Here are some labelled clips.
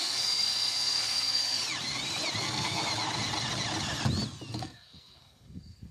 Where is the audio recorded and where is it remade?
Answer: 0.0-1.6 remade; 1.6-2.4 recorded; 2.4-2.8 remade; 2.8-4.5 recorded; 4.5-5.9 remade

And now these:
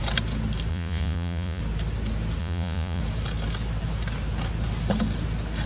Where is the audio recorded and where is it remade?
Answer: 0.0-0.7 recorded; 0.7-1.6 remade; 1.6-2.4 recorded; 2.4-3.0 remade; 3.0-5.7 recorded

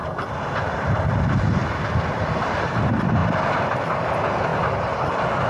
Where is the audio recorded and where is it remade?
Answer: 0.0-5.5 recorded